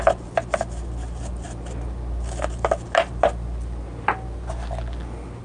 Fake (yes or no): no